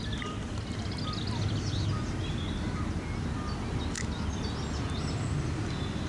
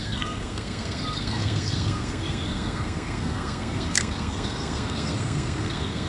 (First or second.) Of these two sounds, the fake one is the second